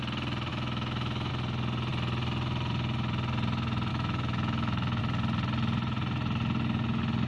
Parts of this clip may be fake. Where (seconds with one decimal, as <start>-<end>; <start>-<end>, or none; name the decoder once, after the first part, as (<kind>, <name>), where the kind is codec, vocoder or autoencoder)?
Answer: 0.5-1.3 (autoencoder, DAC-VAE); 3.9-5.0